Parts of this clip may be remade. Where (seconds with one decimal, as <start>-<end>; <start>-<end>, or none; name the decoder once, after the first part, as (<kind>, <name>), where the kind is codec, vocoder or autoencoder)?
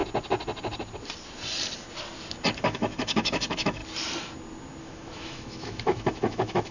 2.6-3.8 (autoencoder, DAC-VAE); 4.8-6.7